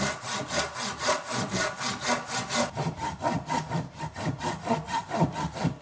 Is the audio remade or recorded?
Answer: recorded